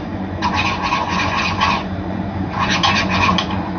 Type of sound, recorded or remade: remade